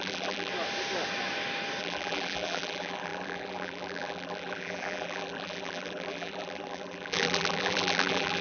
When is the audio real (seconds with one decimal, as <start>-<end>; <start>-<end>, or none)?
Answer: 0.5-1.8